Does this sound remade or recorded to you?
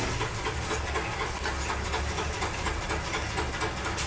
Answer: recorded